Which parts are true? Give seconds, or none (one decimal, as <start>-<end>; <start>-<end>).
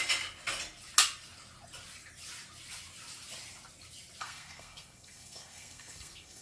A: 0.0-4.2